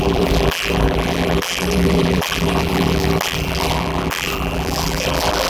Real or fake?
fake